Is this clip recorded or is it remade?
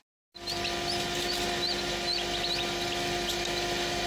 recorded